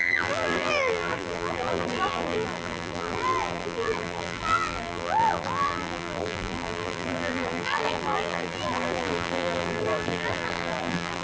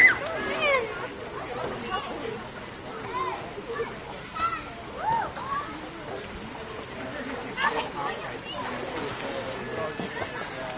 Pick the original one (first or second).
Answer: second